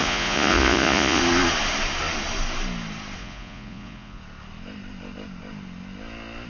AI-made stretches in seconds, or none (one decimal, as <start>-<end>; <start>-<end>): 0.0-1.2; 3.2-4.2